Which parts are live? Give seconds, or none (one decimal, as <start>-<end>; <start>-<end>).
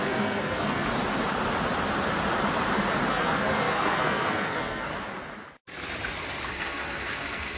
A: 0.9-3.1; 4.9-6.5